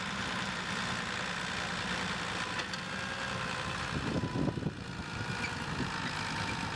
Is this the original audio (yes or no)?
yes